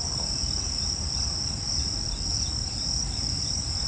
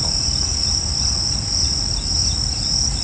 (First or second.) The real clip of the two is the second